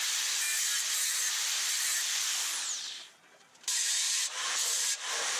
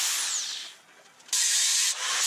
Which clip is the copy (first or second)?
first